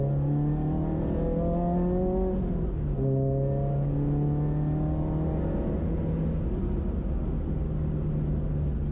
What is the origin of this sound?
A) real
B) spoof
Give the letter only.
A